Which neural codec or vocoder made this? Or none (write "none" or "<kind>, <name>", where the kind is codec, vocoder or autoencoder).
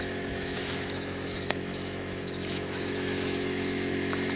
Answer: autoencoder, DAC-VAE